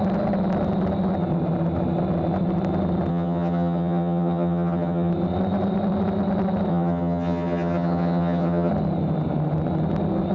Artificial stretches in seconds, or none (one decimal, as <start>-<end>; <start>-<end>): 3.1-5.1; 6.7-8.7